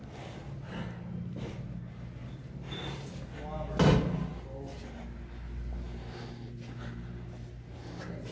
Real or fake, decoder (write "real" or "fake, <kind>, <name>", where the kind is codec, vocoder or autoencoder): real